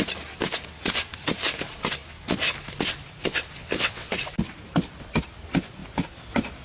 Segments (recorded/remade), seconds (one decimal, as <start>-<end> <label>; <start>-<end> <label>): 0.0-3.6 recorded; 3.6-4.1 remade; 4.1-6.6 recorded